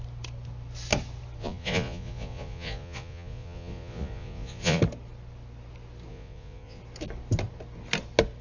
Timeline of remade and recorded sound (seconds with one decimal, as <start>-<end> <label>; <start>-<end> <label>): 0.0-1.4 recorded; 1.4-4.8 remade; 4.8-6.1 recorded; 6.1-6.8 remade; 6.8-8.4 recorded